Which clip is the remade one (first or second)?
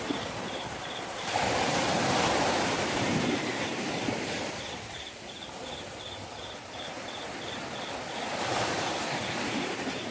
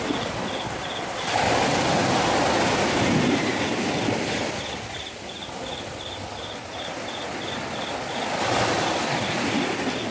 first